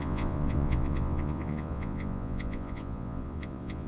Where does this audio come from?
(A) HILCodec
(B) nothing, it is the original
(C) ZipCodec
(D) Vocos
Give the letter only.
D